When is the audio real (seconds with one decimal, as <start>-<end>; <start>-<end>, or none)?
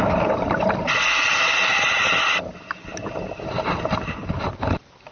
0.0-5.1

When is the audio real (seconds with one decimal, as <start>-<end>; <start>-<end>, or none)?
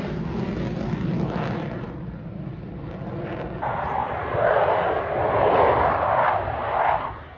0.0-7.4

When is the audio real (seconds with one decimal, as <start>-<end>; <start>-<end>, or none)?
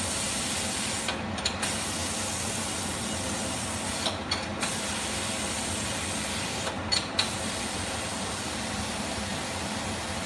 0.0-10.3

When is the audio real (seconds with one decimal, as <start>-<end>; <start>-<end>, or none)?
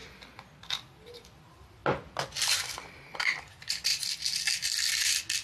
0.0-5.4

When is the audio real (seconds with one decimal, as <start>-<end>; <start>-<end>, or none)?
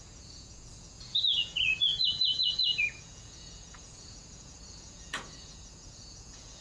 none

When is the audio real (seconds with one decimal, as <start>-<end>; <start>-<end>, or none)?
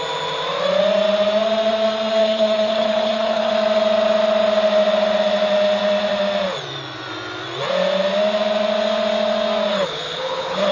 0.0-2.2; 3.5-9.7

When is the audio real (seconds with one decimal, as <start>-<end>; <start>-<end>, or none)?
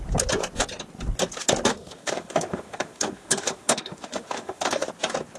0.0-1.7; 4.9-5.4